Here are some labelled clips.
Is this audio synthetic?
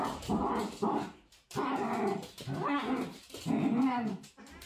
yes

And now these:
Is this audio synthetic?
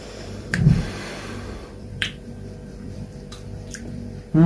yes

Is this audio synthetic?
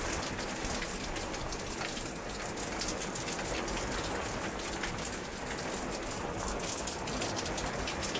no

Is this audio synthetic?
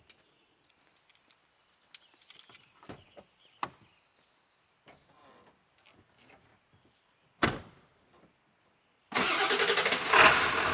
no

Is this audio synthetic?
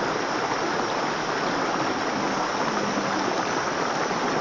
no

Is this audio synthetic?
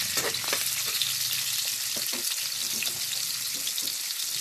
no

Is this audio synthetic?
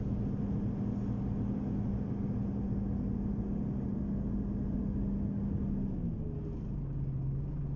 no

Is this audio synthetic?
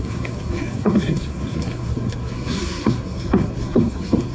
yes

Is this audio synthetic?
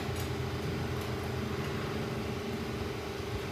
no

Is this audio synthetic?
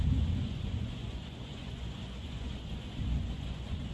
yes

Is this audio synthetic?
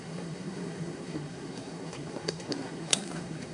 yes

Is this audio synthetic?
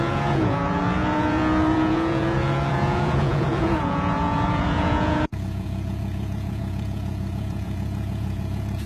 yes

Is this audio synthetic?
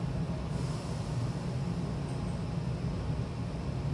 no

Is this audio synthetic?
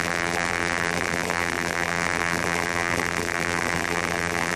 yes